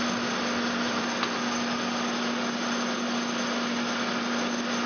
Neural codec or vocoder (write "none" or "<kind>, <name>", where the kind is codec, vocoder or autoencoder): none